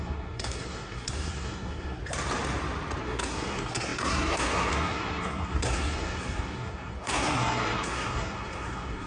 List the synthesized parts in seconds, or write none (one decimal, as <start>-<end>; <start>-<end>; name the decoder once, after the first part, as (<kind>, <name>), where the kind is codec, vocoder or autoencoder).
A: 0.0-2.0 (codec, SNAC); 3.0-9.1